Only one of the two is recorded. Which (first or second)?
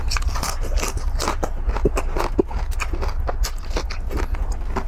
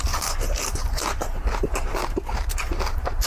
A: first